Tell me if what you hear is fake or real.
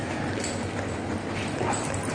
real